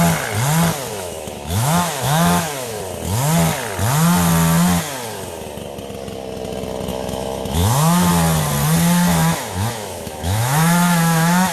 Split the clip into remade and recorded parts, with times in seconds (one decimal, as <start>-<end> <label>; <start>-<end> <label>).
0.0-0.9 recorded; 0.9-2.8 remade; 2.8-6.9 recorded; 6.9-8.1 remade; 8.1-9.1 recorded; 9.1-11.5 remade